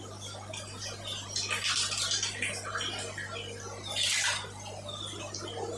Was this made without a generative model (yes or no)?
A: yes